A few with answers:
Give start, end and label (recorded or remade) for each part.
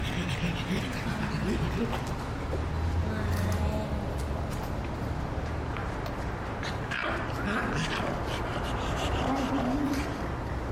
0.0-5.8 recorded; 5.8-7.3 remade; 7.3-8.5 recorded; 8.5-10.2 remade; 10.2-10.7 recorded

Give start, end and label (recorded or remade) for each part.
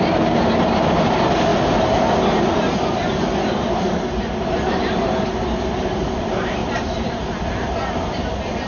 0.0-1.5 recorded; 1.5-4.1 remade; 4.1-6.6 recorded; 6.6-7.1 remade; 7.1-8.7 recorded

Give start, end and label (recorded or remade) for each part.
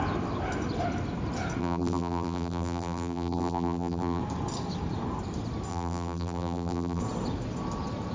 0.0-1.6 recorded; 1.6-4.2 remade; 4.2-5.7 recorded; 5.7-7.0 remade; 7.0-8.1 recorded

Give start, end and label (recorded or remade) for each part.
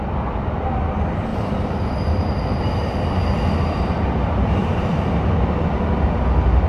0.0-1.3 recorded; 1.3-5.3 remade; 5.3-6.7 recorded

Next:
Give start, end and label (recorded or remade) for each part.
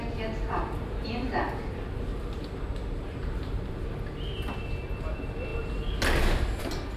0.0-2.1 recorded; 2.1-3.7 remade; 3.7-7.0 recorded